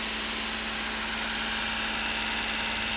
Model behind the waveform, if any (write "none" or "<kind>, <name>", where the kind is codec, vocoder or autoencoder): none